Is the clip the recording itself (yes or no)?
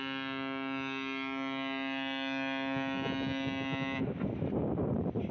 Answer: yes